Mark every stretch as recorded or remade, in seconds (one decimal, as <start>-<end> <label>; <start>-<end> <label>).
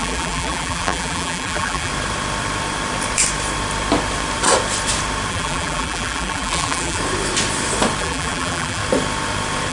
0.0-1.9 remade; 1.9-5.3 recorded; 5.3-7.0 remade; 7.0-8.0 recorded; 8.0-8.8 remade; 8.8-9.7 recorded